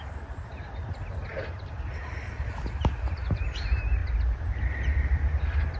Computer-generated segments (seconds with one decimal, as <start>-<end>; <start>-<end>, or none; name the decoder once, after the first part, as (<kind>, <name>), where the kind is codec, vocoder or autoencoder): none